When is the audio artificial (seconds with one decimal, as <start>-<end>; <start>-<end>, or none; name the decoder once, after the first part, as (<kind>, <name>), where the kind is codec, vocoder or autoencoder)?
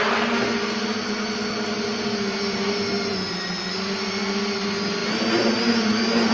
none